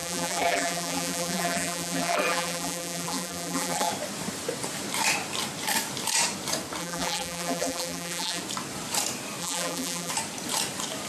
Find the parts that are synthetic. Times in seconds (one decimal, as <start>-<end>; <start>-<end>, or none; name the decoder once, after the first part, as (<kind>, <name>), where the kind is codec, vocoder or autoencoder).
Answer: 0.0-3.9 (vocoder, BigVGAN v2); 6.8-8.4; 9.4-10.1